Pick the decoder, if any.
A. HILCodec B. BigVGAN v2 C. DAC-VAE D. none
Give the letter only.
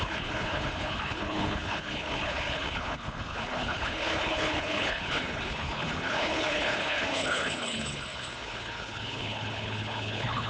A